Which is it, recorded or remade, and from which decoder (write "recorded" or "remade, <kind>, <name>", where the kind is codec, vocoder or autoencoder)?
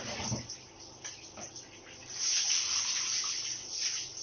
recorded